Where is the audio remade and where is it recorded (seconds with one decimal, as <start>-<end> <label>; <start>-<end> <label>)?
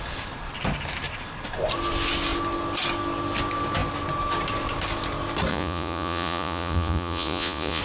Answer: 0.0-5.5 recorded; 5.5-7.8 remade